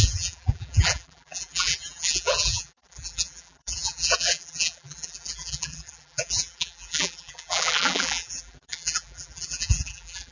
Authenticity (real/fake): fake